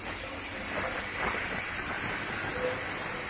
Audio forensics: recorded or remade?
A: recorded